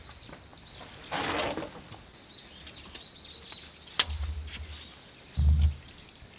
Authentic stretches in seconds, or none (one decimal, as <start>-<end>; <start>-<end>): 0.0-6.4